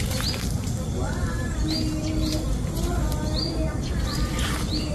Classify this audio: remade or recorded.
recorded